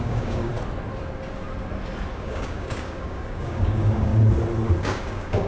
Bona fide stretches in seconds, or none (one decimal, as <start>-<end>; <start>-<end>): 0.5-2.1; 4.1-4.8